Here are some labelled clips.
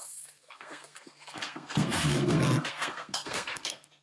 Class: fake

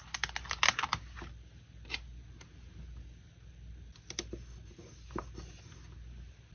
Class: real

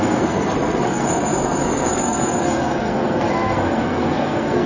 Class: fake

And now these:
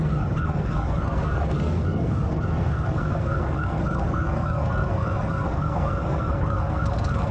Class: fake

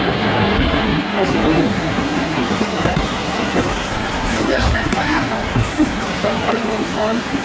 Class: fake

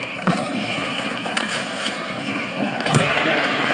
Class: fake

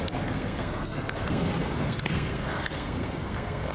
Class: fake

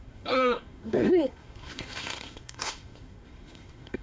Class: fake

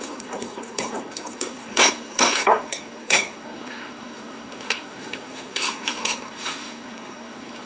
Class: fake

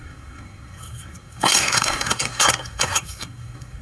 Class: fake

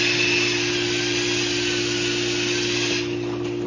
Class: real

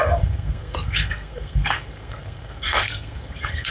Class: fake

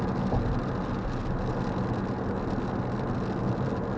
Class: real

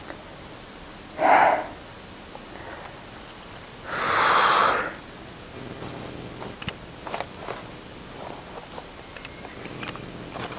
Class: real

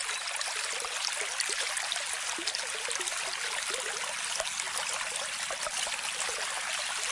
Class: real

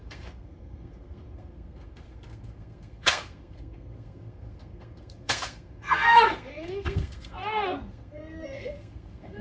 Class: fake